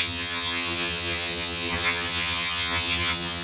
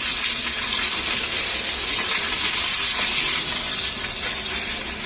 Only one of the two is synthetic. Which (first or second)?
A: first